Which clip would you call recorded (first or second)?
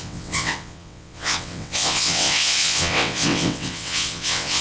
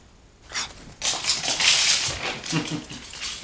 second